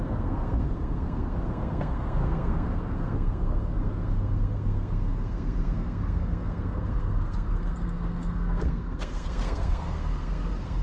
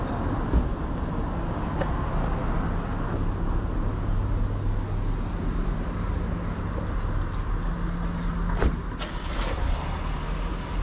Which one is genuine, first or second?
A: second